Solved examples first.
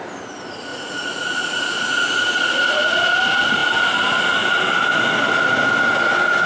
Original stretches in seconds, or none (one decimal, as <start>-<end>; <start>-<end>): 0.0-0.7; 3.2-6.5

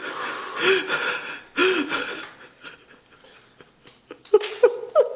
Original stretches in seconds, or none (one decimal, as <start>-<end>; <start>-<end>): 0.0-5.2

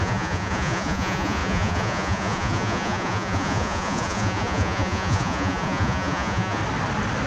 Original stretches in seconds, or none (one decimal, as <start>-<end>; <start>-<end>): 6.6-7.3

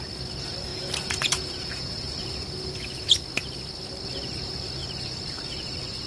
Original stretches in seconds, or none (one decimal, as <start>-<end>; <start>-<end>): 0.0-0.7; 3.2-6.1

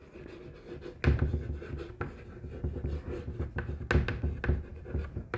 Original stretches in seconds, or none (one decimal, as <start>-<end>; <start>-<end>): 0.0-5.4

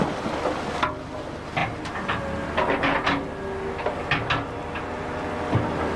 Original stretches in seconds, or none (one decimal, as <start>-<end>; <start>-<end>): 0.0-6.0

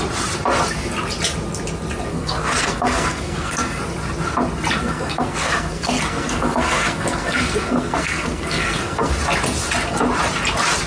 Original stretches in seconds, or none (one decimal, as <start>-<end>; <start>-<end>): 0.0-2.1; 3.8-4.8; 9.1-10.9